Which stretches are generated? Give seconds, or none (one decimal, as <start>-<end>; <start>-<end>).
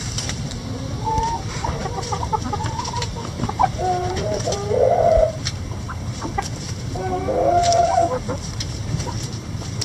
0.0-9.8